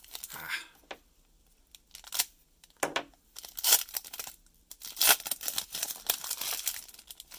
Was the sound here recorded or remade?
recorded